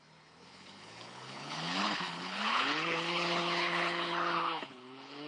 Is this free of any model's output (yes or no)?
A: no